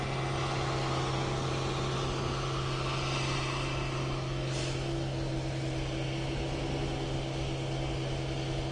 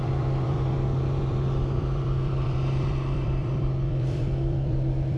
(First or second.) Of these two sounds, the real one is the first